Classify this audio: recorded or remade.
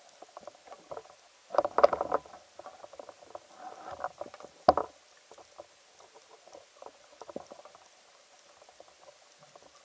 recorded